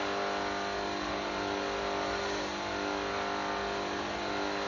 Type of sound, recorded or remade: recorded